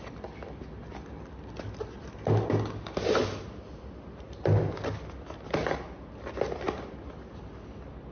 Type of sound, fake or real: real